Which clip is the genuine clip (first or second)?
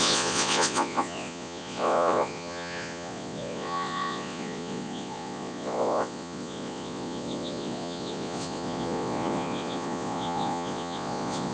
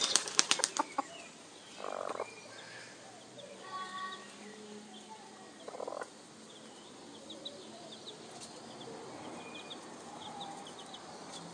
second